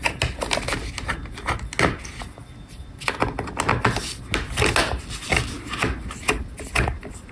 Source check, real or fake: real